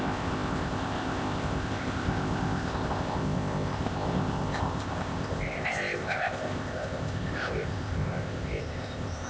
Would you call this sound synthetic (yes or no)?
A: yes